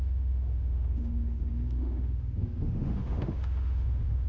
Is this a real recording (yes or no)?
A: no